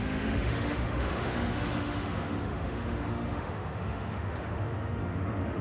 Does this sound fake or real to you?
fake